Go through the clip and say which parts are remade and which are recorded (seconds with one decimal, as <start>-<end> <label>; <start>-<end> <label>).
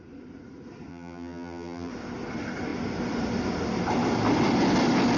0.0-0.9 recorded; 0.9-1.9 remade; 1.9-5.2 recorded